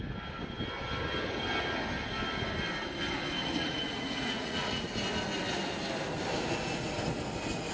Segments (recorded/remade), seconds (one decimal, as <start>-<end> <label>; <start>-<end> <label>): 0.0-3.4 recorded; 3.4-4.9 remade; 4.9-7.7 recorded